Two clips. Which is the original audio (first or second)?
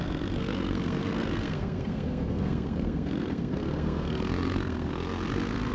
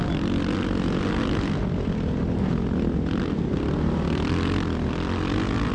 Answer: second